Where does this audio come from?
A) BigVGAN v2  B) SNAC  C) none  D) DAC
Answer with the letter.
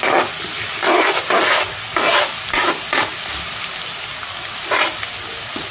C